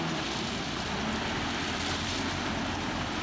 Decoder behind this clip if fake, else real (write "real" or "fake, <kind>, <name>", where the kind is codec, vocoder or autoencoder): fake, vocoder, BigVGAN v2